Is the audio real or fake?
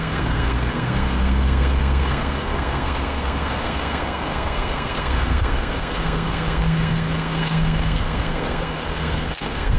fake